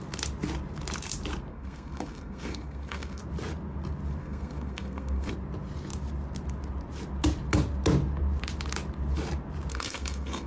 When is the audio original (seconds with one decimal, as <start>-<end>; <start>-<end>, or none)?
0.0-1.5; 3.2-4.2; 5.3-9.7